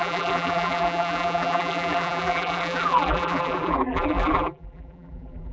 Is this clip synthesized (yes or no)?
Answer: yes